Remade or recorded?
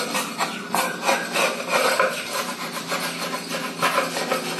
recorded